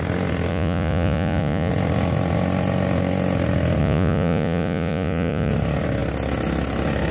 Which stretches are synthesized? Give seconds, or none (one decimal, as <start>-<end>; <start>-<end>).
0.5-1.7; 3.8-5.5